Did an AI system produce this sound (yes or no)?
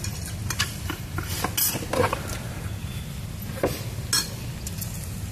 no